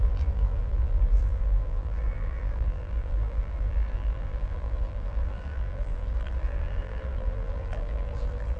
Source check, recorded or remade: remade